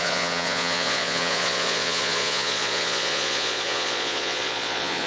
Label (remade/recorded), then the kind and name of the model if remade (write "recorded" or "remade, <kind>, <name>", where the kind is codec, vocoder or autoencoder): remade, vocoder, Vocos